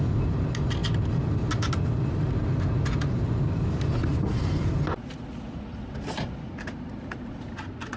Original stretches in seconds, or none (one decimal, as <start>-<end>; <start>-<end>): 0.0-8.0

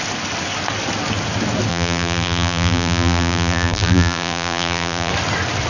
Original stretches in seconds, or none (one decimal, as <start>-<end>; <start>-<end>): 0.0-1.7; 5.1-5.7